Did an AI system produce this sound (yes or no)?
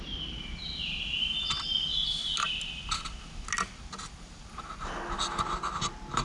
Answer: no